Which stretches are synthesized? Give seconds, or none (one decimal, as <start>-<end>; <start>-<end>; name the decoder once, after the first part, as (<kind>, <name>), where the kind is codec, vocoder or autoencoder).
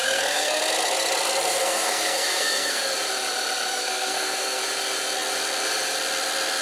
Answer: 0.0-0.6 (codec, SNAC); 1.6-2.8; 3.7-4.6